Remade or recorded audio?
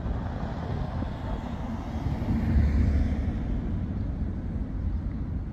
recorded